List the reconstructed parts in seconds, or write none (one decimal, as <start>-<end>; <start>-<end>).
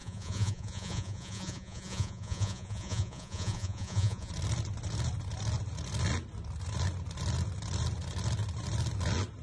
0.0-4.3